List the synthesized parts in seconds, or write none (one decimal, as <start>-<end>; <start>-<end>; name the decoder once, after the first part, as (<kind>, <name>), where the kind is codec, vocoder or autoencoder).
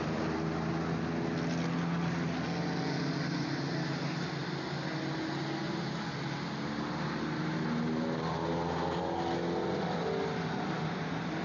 none